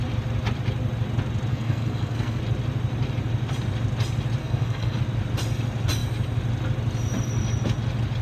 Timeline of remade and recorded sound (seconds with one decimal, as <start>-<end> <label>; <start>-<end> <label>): 0.0-1.5 recorded; 1.5-2.4 remade; 2.4-4.4 recorded; 4.4-5.0 remade; 5.0-8.2 recorded